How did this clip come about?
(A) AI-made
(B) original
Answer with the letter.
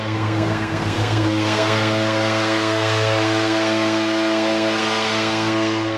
A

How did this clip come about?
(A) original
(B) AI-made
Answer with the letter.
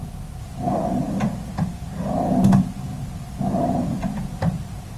A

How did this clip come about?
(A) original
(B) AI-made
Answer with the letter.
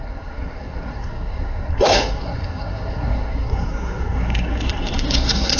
B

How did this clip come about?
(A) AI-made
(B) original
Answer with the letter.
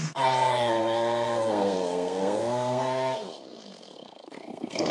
A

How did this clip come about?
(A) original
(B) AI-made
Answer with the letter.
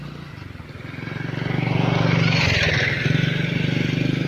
A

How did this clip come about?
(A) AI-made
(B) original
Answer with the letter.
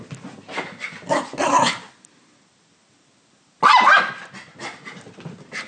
B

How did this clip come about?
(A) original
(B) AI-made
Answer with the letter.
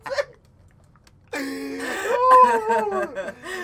A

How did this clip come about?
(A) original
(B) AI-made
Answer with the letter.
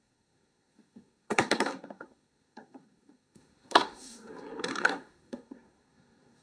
B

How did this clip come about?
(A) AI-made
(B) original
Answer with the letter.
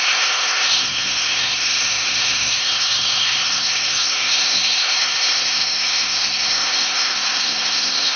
A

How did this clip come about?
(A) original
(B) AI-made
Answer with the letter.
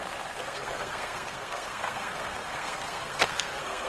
B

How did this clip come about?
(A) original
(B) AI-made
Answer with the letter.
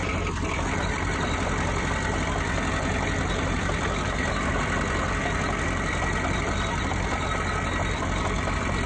A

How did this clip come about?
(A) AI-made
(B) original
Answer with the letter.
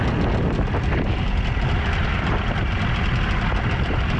B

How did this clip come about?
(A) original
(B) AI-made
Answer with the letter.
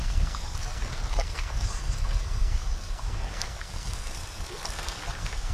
B